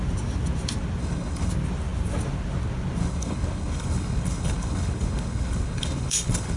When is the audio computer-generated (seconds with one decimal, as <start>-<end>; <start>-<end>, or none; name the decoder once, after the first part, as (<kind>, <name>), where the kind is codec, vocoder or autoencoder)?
1.0-1.5 (codec, HILCodec); 3.0-6.6